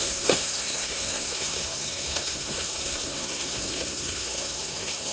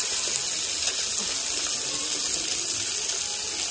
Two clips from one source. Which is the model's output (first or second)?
first